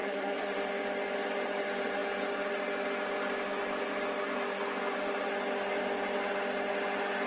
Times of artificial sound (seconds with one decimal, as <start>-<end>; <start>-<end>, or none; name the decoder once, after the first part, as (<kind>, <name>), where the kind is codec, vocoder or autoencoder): 0.0-0.6 (vocoder, Vocos)